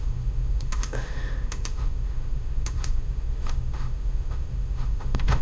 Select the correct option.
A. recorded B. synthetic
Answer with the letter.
B